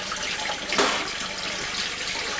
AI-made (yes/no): no